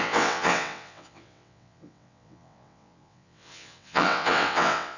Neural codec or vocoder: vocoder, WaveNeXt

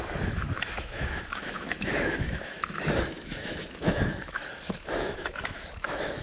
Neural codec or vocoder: autoencoder, DAC-VAE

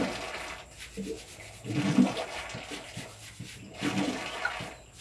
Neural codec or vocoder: none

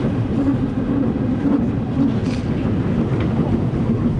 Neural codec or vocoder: none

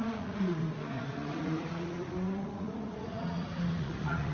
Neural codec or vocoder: vocoder, Vocos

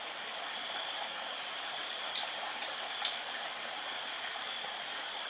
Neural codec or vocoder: vocoder, BigVGAN v2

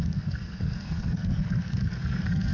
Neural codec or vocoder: codec, SNAC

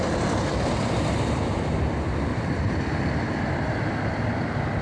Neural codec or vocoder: none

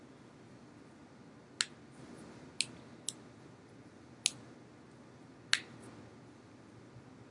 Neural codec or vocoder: none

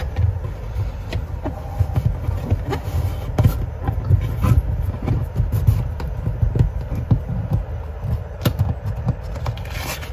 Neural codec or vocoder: none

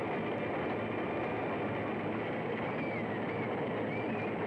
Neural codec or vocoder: none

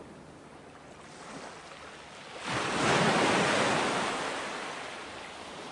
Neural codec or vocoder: none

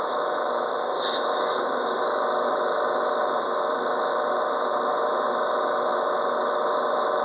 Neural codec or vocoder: vocoder, BigVGAN v2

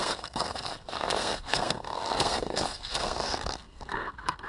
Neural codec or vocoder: codec, SNAC